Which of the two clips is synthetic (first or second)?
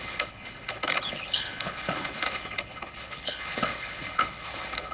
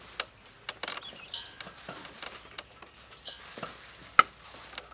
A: first